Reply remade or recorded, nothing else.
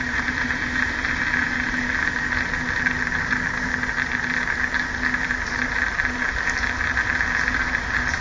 recorded